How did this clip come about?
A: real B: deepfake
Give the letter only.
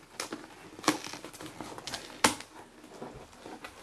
A